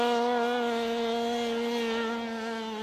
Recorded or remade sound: recorded